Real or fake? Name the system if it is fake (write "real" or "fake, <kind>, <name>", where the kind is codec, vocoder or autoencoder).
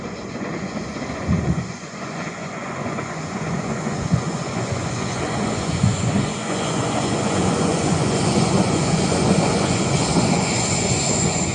fake, vocoder, Vocos